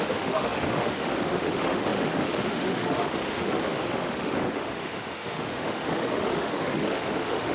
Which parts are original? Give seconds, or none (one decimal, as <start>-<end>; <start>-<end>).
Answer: none